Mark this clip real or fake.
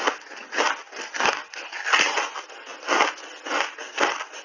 real